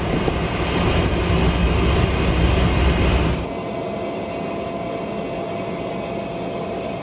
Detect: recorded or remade recorded